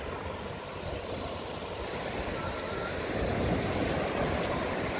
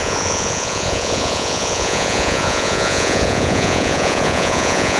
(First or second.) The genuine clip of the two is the first